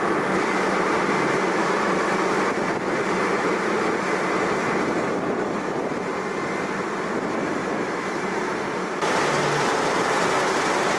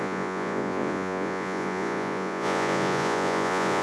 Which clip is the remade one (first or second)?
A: second